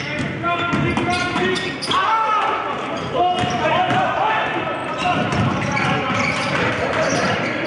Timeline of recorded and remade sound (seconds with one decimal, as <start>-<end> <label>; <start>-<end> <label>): 0.0-4.8 recorded; 4.8-6.7 remade; 6.7-7.7 recorded